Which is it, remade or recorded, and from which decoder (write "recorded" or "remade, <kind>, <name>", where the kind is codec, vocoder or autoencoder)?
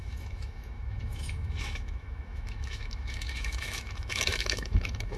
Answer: remade, autoencoder, DAC-VAE